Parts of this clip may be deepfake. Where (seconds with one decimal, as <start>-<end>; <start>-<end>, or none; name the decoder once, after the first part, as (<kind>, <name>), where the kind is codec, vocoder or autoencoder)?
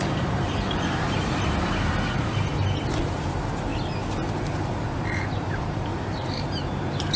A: 0.0-2.5 (vocoder, BigVGAN v2); 3.0-3.7; 4.3-7.2